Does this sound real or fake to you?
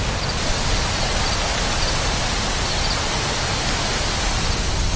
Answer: real